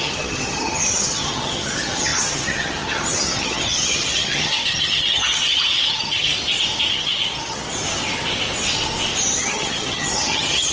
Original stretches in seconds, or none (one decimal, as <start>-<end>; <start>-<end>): 6.3-6.9; 7.6-9.4